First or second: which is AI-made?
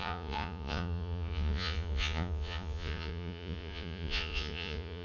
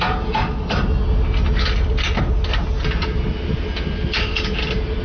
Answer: first